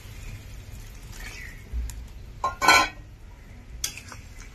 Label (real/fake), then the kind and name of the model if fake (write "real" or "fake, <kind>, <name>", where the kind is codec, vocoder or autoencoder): real